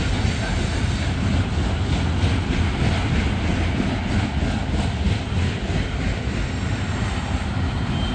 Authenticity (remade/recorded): recorded